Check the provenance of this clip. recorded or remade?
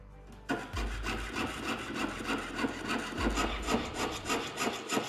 recorded